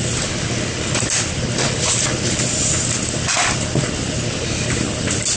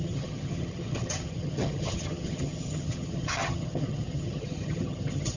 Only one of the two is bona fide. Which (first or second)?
first